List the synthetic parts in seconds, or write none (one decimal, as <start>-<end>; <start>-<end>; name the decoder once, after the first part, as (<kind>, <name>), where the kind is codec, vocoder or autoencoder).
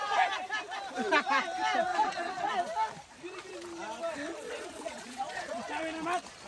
1.9-2.5 (vocoder, Vocos); 4.3-5.7